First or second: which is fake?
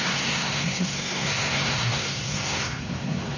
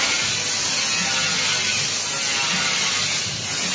first